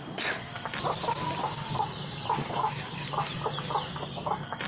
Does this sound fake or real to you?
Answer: real